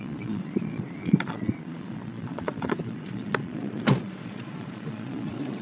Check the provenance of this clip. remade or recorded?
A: remade